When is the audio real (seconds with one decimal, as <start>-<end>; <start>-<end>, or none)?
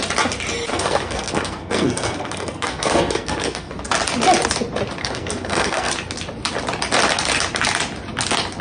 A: 0.0-0.7; 3.7-5.0; 5.9-8.6